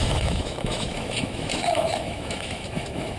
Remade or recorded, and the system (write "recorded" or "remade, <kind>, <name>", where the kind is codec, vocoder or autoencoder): remade, autoencoder, DAC-VAE